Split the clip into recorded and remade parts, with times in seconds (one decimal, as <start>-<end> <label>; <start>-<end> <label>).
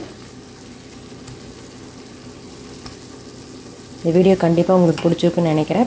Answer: 0.0-4.2 recorded; 4.2-5.0 remade; 5.0-5.9 recorded